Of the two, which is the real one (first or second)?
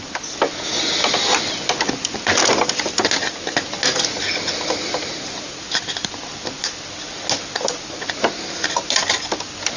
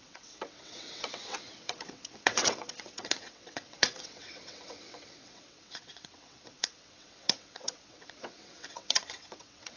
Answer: first